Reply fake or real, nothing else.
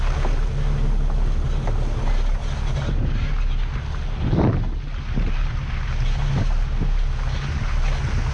real